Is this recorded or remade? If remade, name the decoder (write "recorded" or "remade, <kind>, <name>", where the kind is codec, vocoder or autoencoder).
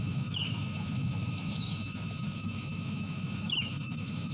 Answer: remade, autoencoder, DAC-VAE